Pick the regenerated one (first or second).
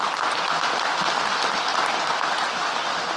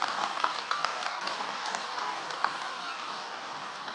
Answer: second